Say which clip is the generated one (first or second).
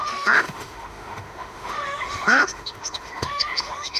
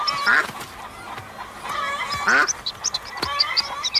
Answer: first